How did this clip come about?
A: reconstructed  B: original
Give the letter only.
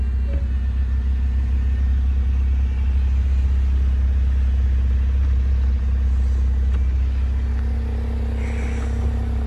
B